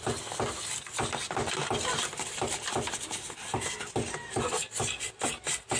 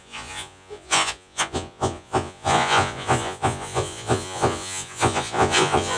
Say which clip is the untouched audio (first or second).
first